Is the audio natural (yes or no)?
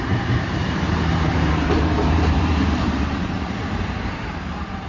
no